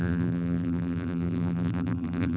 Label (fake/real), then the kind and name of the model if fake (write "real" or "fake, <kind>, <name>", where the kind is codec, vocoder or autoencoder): fake, vocoder, BigVGAN v2